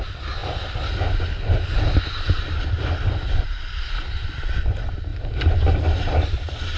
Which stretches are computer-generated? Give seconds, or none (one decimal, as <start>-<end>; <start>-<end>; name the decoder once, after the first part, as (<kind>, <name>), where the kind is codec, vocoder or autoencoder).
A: none